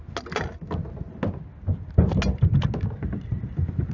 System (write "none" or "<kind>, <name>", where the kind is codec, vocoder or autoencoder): none